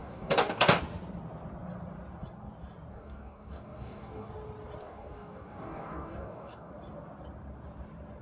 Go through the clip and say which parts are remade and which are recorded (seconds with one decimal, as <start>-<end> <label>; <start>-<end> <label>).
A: 0.0-0.8 remade; 0.8-2.9 recorded; 2.9-4.3 remade; 4.3-4.8 recorded; 4.8-6.7 remade; 6.7-8.2 recorded